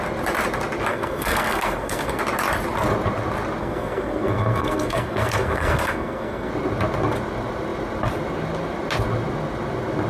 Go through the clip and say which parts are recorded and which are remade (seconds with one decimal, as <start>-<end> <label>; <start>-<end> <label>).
0.0-0.9 recorded; 0.9-2.2 remade; 2.2-3.6 recorded; 3.6-6.5 remade; 6.5-10.1 recorded